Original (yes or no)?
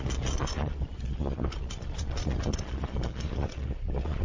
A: no